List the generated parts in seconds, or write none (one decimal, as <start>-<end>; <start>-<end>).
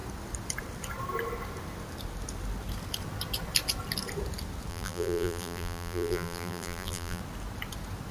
4.7-7.2